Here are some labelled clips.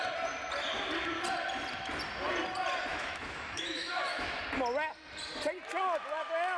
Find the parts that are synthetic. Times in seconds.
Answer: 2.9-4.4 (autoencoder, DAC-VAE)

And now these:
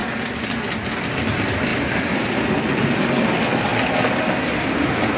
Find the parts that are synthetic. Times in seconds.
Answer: none

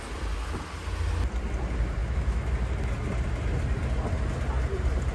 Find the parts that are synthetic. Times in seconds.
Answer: 2.0-2.5 (autoencoder, DAC-VAE)

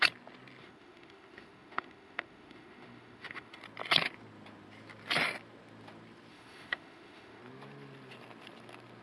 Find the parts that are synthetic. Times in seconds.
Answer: 0.6-3.6 (autoencoder, DAC-VAE); 6.3-7.4

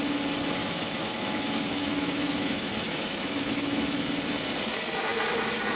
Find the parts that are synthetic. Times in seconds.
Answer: 0.6-4.1 (autoencoder, DAC-VAE)